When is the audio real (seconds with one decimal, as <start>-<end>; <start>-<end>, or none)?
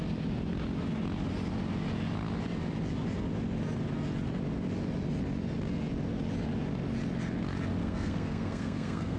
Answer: 0.0-7.8